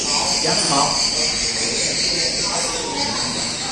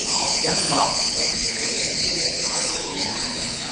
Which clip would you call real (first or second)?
first